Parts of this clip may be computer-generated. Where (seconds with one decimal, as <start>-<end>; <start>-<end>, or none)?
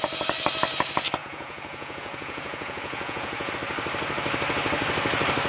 1.2-3.5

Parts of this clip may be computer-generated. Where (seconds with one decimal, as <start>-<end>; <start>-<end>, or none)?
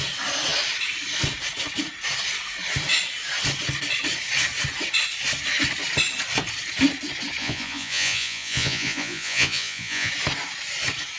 7.4-10.1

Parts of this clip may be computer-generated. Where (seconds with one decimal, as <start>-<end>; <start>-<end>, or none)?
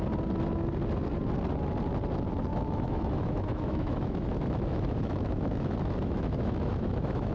2.5-7.3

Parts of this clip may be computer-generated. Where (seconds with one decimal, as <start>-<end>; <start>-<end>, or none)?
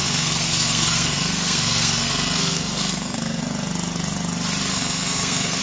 0.0-3.4; 4.7-5.6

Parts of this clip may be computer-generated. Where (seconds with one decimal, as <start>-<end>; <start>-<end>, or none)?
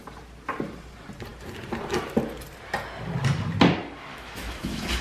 4.1-5.0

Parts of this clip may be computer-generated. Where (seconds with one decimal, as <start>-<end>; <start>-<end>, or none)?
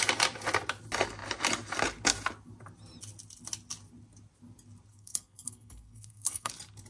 4.9-6.5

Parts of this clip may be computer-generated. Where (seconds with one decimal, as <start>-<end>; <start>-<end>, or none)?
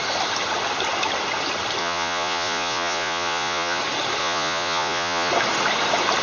1.8-3.8; 4.2-5.3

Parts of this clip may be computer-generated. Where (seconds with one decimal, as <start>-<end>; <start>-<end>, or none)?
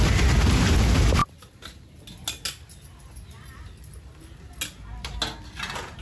1.2-2.0